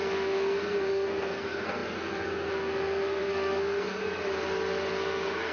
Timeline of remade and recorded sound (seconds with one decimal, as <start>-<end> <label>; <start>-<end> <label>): 0.0-4.0 remade; 4.0-4.9 recorded; 4.9-5.5 remade